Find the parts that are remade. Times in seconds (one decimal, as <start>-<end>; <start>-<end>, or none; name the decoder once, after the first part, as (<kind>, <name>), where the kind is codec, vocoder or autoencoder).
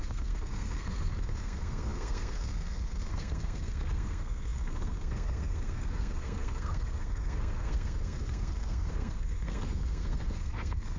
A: 0.0-11.0 (codec, SNAC)